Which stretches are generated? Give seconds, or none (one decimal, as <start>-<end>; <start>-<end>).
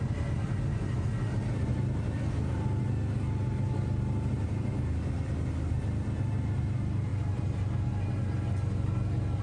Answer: none